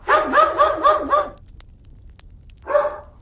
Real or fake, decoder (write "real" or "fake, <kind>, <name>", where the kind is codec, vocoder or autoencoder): real